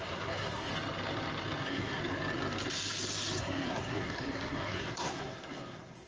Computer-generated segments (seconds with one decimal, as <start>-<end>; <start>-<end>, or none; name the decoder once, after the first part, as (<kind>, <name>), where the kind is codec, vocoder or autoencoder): 0.0-0.7 (codec, SNAC); 1.6-2.0; 3.4-6.1